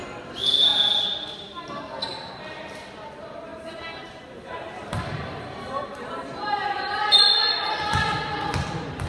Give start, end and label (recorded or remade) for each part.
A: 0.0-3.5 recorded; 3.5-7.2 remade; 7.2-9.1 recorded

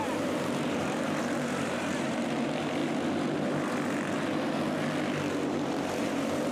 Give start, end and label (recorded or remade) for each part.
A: 0.0-2.8 remade; 2.8-5.3 recorded; 5.3-6.5 remade

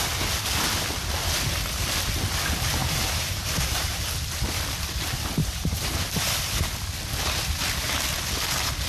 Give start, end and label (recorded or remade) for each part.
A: 0.0-2.8 recorded; 2.8-4.0 remade; 4.0-5.4 recorded; 5.4-6.4 remade; 6.4-8.9 recorded

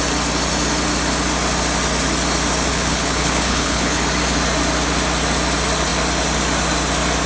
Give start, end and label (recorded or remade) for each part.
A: 0.0-2.7 recorded; 2.7-4.0 remade; 4.0-7.3 recorded

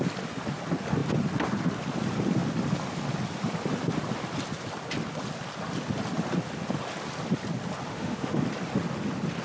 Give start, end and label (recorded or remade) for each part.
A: 0.0-7.9 recorded; 7.9-8.4 remade; 8.4-9.4 recorded

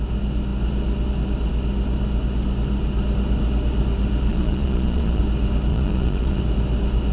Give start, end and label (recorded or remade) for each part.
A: 0.0-4.3 recorded; 4.3-5.2 remade; 5.2-5.7 recorded; 5.7-6.4 remade; 6.4-7.1 recorded

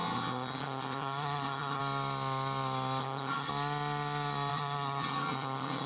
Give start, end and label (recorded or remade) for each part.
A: 0.0-1.8 remade; 1.8-3.0 recorded; 3.0-3.5 remade; 3.5-4.5 recorded; 4.5-5.9 remade

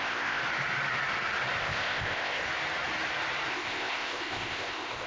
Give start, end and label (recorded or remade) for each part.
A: 0.0-0.4 remade; 0.4-1.6 recorded; 1.6-2.4 remade; 2.4-3.5 recorded; 3.5-5.1 remade